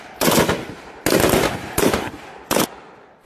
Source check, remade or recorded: recorded